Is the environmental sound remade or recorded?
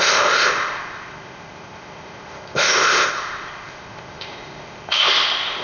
remade